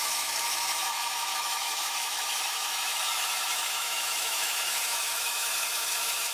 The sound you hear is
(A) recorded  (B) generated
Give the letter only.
B